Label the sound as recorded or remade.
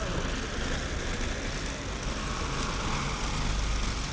recorded